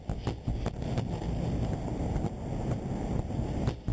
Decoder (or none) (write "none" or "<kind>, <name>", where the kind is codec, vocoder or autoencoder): none